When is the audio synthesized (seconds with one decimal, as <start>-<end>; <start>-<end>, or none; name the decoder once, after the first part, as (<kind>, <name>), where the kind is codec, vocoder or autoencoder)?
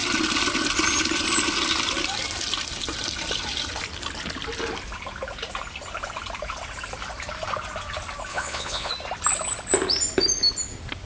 8.3-8.9 (vocoder, Vocos)